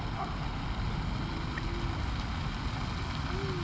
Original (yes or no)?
yes